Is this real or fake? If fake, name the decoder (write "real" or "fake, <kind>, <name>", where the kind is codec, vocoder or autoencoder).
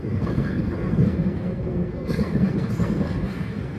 fake, codec, SNAC